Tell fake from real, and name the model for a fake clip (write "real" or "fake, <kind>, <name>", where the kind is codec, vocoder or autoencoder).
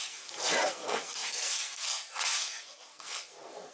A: fake, codec, SNAC